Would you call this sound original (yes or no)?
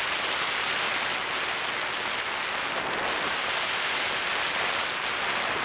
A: yes